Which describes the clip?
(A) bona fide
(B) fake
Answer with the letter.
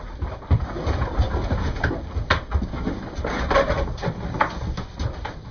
A